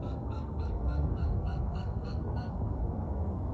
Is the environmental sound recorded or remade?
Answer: remade